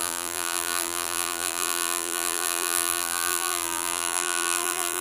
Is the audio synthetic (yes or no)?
yes